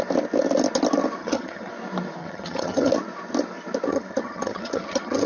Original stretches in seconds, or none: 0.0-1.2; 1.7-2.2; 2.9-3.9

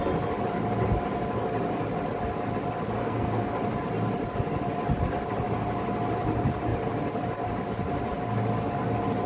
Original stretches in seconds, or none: 0.0-3.0; 3.5-9.3

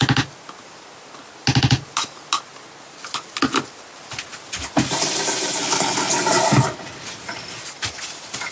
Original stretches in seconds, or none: 0.0-5.6; 6.1-8.5

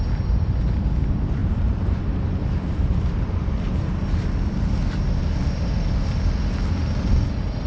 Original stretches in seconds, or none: 0.0-1.4; 3.1-7.7

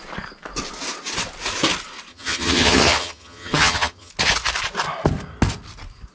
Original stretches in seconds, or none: 0.0-2.1; 4.1-6.1

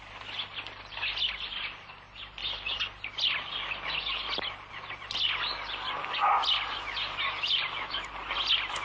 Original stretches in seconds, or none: 0.0-8.8

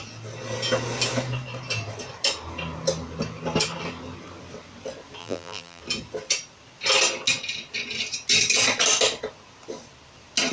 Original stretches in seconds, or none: 0.0-5.2; 5.8-10.5

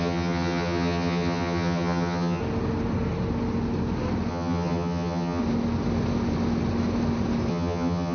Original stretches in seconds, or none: 2.4-4.3; 5.4-7.5